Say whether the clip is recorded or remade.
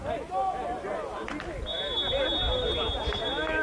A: recorded